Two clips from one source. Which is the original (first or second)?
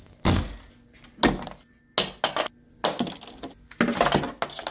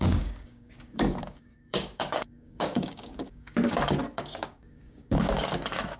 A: first